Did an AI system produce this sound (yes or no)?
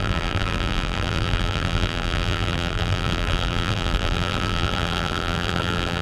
yes